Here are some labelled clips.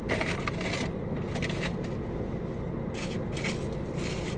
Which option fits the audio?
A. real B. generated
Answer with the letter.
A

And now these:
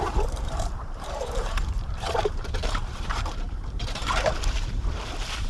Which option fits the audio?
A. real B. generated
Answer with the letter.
B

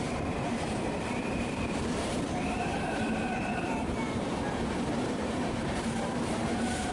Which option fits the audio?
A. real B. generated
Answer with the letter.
B